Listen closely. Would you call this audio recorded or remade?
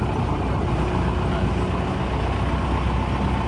recorded